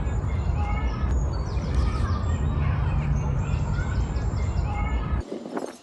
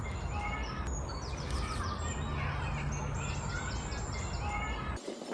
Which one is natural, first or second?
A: second